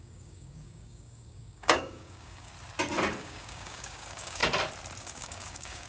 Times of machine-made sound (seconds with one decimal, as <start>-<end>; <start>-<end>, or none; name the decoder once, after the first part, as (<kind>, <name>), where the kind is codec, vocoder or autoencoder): 0.0-2.5 (codec, DAC); 3.2-4.4; 5.0-5.9